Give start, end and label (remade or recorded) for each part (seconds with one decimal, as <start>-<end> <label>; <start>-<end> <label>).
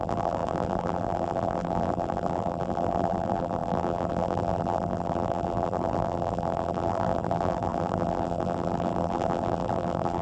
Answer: 0.0-10.2 remade